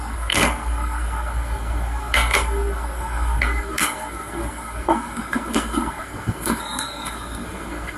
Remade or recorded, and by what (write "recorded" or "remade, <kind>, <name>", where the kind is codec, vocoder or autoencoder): remade, codec, SNAC